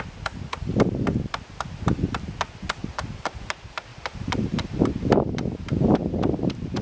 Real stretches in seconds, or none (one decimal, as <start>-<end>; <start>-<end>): 0.0-2.8; 3.4-3.9; 5.6-6.0